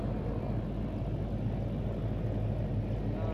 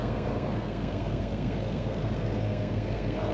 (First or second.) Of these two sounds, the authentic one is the first